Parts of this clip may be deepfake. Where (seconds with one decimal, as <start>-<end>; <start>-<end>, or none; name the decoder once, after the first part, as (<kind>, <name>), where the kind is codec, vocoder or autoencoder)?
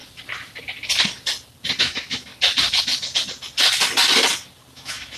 1.8-2.3 (autoencoder, DAC-VAE); 4.7-5.2